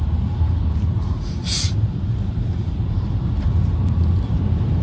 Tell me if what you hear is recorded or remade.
remade